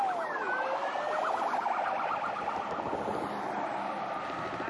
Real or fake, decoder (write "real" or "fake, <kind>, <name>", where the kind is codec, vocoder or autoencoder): real